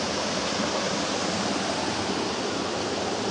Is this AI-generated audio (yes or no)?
no